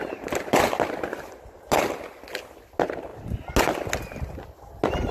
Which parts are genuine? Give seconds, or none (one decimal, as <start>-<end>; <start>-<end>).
0.0-5.1